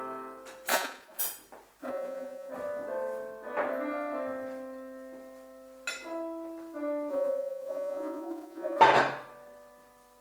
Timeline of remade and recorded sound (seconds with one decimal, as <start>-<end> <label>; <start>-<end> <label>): 0.0-0.7 recorded; 0.7-1.2 remade; 1.2-1.8 recorded; 1.8-2.5 remade; 2.5-7.1 recorded; 7.1-8.8 remade; 8.8-10.2 recorded

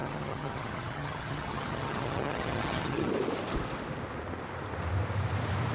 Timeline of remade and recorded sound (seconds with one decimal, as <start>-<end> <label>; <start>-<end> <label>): 0.0-3.1 remade; 3.1-5.7 recorded

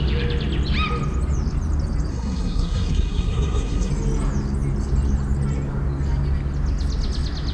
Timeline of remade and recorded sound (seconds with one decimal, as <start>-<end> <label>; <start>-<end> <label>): 0.0-2.1 recorded; 2.1-3.9 remade; 3.9-7.5 recorded